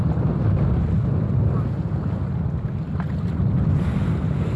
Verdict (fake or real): real